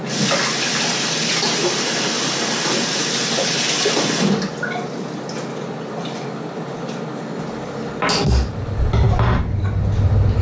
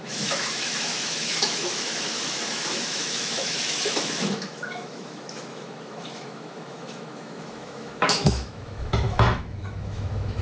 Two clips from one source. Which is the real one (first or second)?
first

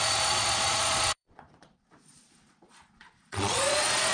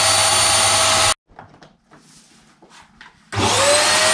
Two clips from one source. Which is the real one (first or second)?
second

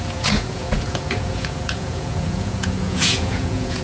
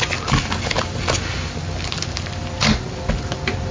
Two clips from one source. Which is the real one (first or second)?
second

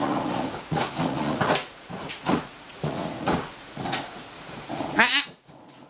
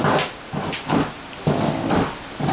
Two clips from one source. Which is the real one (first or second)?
second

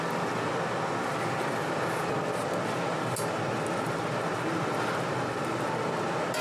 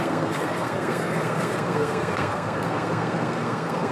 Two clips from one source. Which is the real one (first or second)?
first